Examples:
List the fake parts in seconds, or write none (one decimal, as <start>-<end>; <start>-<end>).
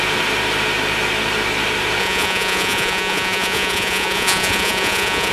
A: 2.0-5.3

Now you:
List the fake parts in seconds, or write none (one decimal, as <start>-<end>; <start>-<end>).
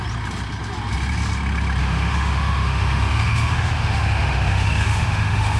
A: 1.8-5.6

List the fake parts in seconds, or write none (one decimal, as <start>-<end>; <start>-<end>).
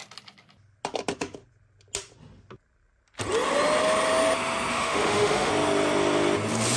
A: 4.7-5.5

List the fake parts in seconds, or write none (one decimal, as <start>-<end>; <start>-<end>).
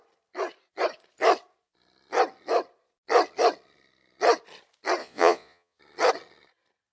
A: 5.0-5.8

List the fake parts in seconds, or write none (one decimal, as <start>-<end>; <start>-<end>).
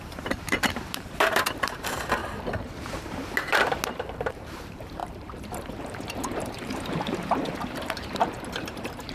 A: 0.0-2.2; 4.0-9.1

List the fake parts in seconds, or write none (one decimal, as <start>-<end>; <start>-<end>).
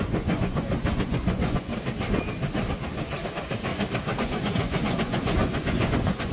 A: 0.0-1.7; 3.3-3.7; 4.2-6.3